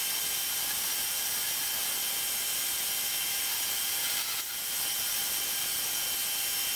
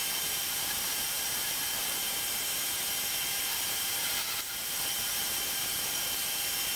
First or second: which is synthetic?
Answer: second